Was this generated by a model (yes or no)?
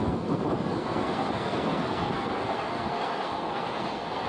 yes